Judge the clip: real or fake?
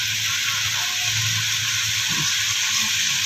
real